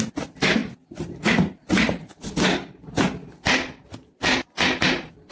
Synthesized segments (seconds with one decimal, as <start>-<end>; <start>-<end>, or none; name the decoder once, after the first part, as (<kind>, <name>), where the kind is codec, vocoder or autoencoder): none